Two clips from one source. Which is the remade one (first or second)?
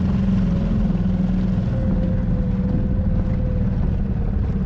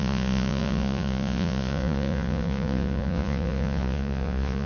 second